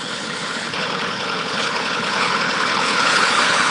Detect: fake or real fake